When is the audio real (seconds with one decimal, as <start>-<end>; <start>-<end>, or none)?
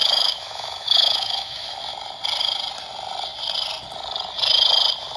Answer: 1.8-5.2